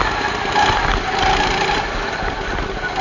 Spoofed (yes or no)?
no